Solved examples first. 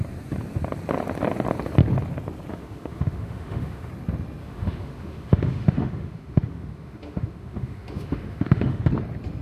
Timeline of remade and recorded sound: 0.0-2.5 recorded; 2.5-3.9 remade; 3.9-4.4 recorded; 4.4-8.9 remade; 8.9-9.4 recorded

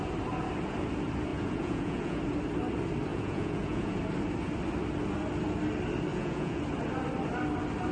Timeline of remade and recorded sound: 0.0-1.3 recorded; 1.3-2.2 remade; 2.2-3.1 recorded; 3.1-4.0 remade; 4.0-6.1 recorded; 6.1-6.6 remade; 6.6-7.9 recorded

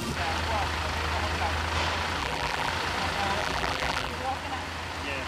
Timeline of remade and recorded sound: 0.0-2.2 recorded; 2.2-2.7 remade; 2.7-3.4 recorded; 3.4-4.1 remade; 4.1-5.3 recorded